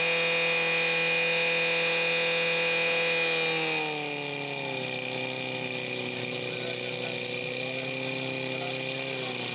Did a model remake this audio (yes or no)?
no